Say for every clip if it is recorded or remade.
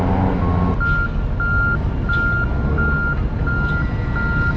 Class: recorded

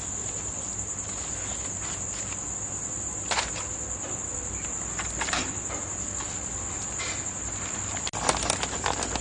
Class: recorded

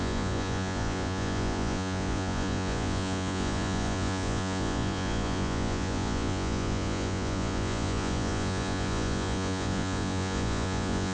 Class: remade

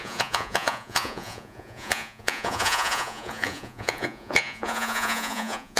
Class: remade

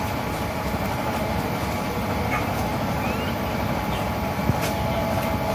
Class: recorded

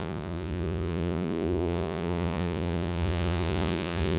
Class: remade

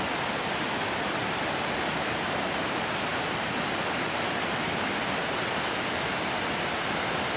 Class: recorded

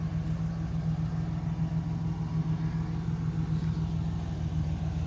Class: recorded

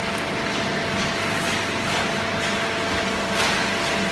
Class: recorded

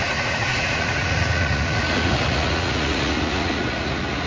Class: remade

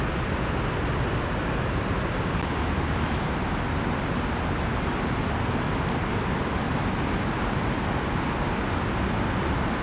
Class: recorded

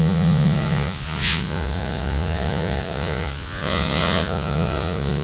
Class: remade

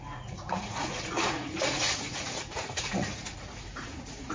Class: remade